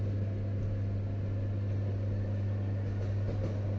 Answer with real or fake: real